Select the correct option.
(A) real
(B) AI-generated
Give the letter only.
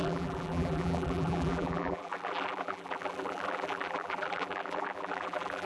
B